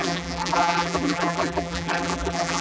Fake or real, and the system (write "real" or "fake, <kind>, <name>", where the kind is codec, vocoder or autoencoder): fake, vocoder, BigVGAN v2